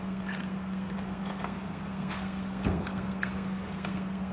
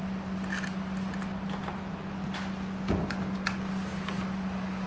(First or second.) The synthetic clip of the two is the first